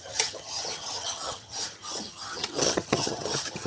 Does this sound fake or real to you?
fake